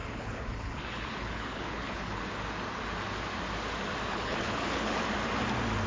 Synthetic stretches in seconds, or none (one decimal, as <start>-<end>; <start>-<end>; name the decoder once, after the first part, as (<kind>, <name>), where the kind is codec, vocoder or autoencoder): 0.0-2.2 (codec, HILCodec); 4.1-5.0

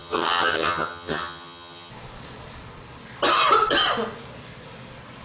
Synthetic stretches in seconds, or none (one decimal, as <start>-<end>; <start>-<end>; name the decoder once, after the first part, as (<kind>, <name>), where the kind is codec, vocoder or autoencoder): 0.0-1.9 (vocoder, HiFi-GAN)

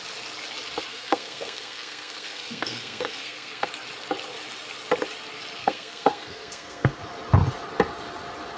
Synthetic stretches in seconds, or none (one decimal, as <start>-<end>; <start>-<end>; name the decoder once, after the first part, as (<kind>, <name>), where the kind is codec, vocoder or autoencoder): 0.9-3.7 (codec, SNAC); 5.6-7.0

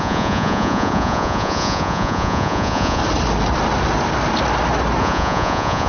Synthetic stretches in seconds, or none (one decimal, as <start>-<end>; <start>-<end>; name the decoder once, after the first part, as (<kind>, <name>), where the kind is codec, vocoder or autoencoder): 0.0-3.0 (vocoder, Vocos); 5.0-5.9

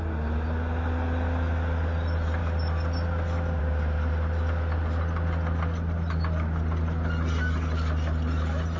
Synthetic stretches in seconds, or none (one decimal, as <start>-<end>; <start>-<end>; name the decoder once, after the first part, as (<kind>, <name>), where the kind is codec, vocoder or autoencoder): none